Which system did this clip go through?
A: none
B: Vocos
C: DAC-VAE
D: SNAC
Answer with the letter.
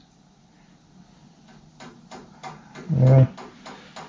A